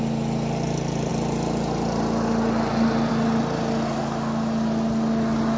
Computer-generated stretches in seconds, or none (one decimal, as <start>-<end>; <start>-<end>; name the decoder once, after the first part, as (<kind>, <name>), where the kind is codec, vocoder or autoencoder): none